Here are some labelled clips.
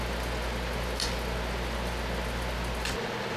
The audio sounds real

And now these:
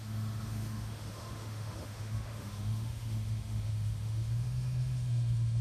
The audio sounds fake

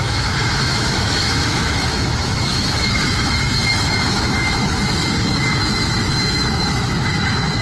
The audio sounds fake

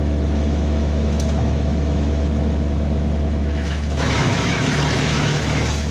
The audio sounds fake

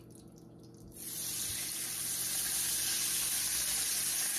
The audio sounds real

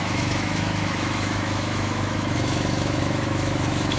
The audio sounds fake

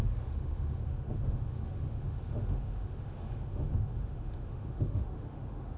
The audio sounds fake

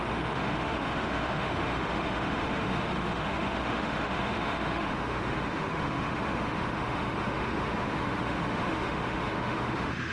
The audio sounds fake